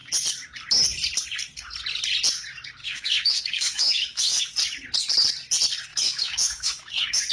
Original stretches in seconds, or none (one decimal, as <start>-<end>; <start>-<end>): 0.0-2.8; 4.4-5.9